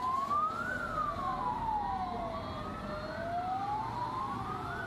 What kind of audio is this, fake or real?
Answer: real